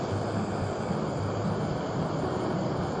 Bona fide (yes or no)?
yes